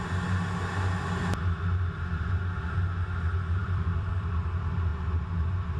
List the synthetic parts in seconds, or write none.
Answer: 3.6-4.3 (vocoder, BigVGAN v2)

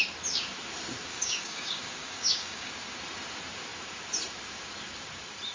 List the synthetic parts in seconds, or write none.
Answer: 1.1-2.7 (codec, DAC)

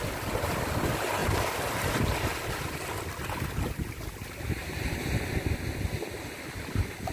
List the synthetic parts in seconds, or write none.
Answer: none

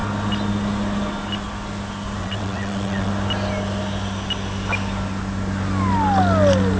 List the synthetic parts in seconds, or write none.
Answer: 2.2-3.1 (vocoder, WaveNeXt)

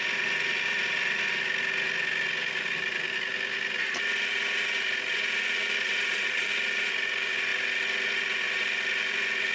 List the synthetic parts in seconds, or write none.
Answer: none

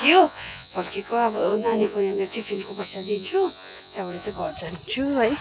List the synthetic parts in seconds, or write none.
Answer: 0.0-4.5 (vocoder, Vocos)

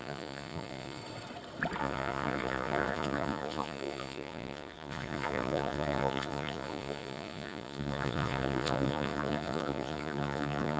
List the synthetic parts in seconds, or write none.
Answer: 0.0-1.0 (vocoder, Vocos); 1.8-10.8

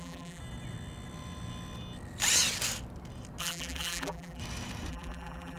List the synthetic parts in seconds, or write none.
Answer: 0.0-0.4 (vocoder, BigVGAN v2); 3.4-4.4; 4.9-5.6